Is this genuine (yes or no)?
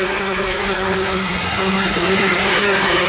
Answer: no